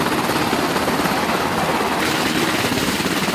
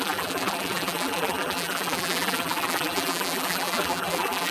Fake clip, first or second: second